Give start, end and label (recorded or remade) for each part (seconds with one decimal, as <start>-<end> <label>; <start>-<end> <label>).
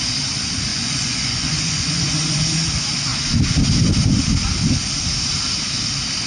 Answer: 0.0-0.7 recorded; 0.7-2.4 remade; 2.4-6.3 recorded